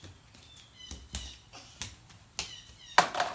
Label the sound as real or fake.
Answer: real